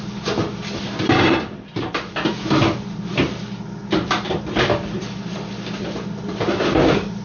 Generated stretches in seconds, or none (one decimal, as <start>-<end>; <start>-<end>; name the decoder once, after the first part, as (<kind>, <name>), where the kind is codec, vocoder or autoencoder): none